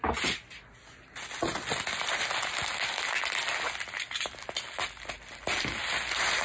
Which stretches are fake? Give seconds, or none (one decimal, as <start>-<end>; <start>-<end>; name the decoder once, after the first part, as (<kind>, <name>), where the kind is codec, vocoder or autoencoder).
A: none